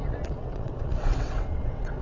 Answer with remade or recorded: remade